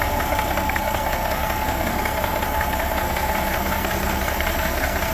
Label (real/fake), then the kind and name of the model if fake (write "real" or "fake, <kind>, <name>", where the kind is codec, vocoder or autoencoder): fake, codec, SNAC